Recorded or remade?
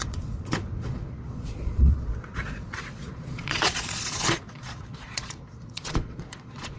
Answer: remade